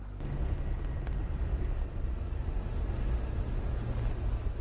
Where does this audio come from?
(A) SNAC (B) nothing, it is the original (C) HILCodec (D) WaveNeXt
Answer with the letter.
B